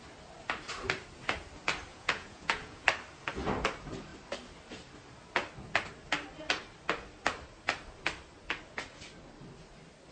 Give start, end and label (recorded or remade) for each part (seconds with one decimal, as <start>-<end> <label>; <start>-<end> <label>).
0.0-1.9 recorded; 1.9-2.8 remade; 2.8-10.1 recorded